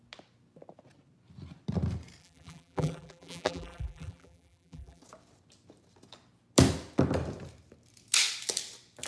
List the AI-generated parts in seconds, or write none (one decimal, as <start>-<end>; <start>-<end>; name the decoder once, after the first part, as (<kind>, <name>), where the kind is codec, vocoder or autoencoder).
2.2-5.0 (vocoder, BigVGAN v2)